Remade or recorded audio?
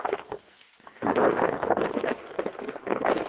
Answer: remade